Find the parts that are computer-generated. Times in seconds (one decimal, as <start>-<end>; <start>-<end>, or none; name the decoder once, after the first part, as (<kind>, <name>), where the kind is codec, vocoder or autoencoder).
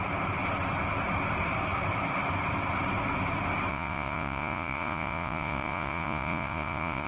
3.7-7.1 (vocoder, Vocos)